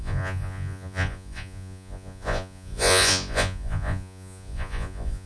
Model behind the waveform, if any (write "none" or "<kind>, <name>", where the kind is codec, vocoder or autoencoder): vocoder, Vocos